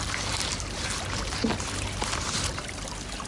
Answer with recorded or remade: recorded